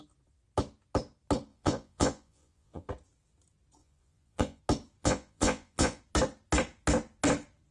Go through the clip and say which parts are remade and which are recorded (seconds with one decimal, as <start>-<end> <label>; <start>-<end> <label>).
0.0-1.5 recorded; 1.5-2.9 remade; 2.9-3.8 recorded; 3.8-4.6 remade; 4.6-5.0 recorded; 5.0-6.0 remade; 6.0-7.7 recorded